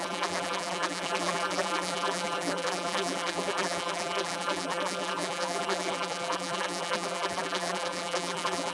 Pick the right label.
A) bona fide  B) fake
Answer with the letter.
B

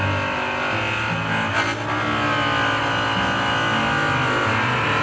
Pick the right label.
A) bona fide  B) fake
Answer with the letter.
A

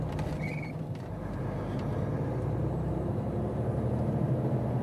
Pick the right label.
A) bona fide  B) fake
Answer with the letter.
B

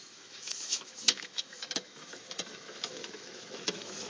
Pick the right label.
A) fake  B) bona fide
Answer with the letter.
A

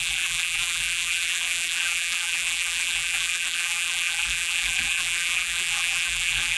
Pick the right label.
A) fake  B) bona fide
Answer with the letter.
A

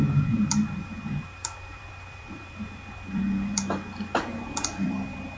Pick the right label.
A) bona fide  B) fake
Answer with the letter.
B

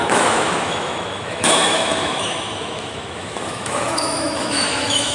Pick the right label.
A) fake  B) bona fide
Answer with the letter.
A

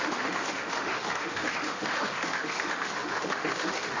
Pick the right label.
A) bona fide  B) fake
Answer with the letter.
B